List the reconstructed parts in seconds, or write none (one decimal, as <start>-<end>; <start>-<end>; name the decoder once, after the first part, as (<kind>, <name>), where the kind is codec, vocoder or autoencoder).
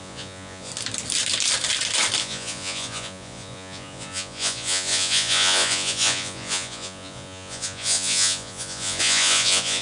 0.0-0.7 (vocoder, Vocos); 2.2-9.8